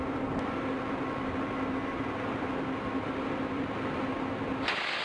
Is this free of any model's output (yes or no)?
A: yes